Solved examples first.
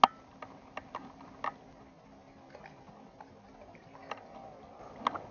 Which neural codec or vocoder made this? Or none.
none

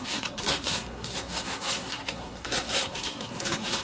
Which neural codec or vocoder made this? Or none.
codec, SNAC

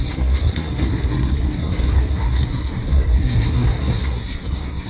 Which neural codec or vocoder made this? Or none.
codec, SNAC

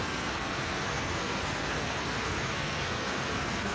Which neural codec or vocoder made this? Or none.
codec, SNAC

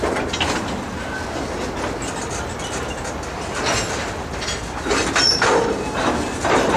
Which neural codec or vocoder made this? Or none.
none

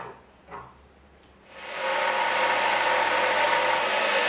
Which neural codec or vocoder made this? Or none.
none